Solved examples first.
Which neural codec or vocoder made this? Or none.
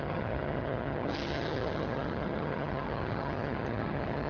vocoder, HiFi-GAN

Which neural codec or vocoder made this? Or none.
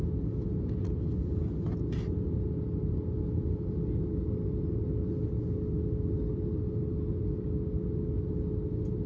none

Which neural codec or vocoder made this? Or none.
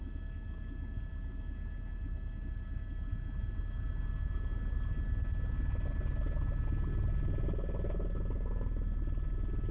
none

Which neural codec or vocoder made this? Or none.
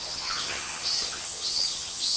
vocoder, HiFi-GAN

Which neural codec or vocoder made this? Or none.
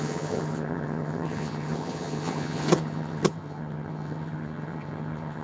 vocoder, HiFi-GAN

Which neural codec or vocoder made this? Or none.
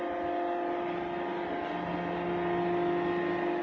none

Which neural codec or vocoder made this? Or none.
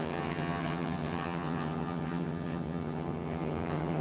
vocoder, HiFi-GAN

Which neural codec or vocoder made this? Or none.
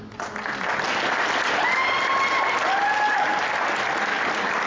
none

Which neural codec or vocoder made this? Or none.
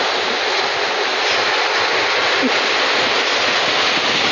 none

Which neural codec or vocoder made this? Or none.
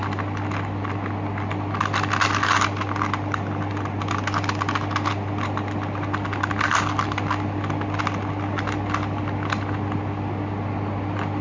none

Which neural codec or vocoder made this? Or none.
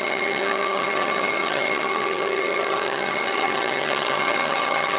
vocoder, HiFi-GAN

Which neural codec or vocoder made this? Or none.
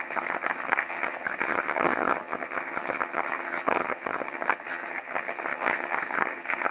vocoder, HiFi-GAN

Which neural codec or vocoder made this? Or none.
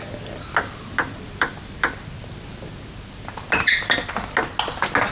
none